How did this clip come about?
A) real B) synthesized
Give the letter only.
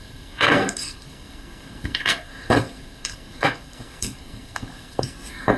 B